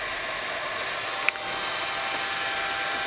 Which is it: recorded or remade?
recorded